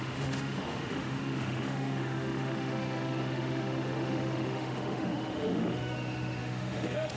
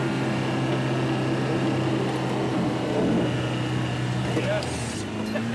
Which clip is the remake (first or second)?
first